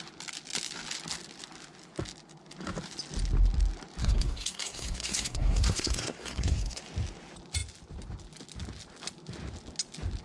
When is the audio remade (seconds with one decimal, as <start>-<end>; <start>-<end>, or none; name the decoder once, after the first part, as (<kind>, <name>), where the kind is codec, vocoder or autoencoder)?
4.0-6.8 (codec, SNAC)